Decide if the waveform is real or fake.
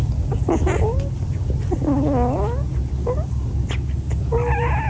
real